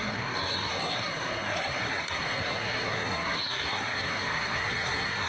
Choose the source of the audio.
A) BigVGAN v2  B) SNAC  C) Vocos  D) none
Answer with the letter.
B